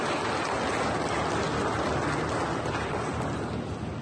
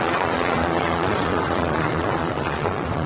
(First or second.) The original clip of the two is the first